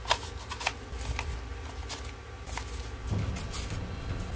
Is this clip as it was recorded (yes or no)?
yes